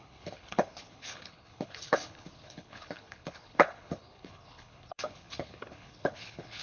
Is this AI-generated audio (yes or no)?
yes